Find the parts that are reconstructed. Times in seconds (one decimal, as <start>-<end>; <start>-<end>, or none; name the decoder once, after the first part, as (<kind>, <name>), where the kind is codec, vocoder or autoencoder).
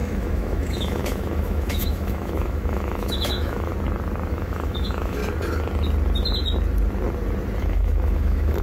0.0-3.7 (autoencoder, DAC-VAE); 4.3-5.2; 7.6-8.6